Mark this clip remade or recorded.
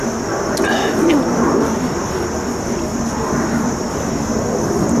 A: recorded